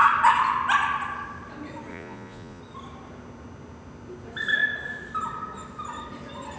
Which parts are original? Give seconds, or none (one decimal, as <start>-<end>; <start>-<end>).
0.0-1.9; 2.6-6.6